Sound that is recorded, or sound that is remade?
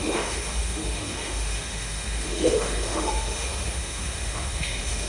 remade